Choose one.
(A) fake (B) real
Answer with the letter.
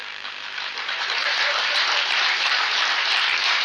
A